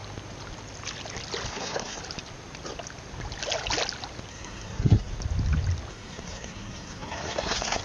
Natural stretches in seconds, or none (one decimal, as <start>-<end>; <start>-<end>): 0.0-1.5; 2.0-4.3; 5.1-5.9